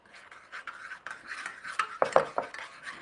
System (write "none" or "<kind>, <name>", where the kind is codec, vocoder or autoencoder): none